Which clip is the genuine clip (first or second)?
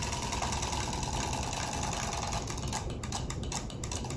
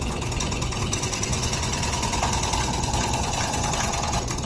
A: first